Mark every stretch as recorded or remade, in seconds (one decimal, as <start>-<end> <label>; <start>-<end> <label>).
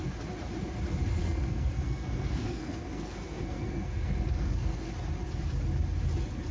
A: 0.0-1.2 recorded; 1.2-4.9 remade; 4.9-6.5 recorded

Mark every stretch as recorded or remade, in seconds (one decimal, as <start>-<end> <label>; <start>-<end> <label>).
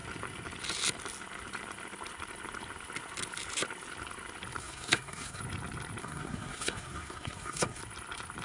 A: 0.0-4.6 recorded; 4.6-5.4 remade; 5.4-6.0 recorded; 6.0-7.8 remade; 7.8-8.4 recorded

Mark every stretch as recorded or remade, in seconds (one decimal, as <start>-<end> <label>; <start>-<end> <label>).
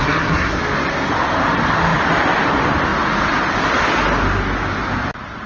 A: 0.0-0.6 remade; 0.6-5.5 recorded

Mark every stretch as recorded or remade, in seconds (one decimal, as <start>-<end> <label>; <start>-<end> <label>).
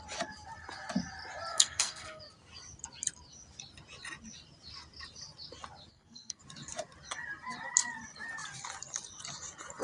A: 0.0-1.5 recorded; 1.5-2.2 remade; 2.2-5.9 recorded; 5.9-6.4 remade; 6.4-9.8 recorded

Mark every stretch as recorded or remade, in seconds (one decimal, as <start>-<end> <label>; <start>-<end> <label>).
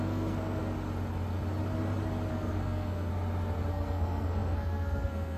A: 0.0-0.6 remade; 0.6-2.3 recorded; 2.3-3.1 remade; 3.1-3.7 recorded; 3.7-5.4 remade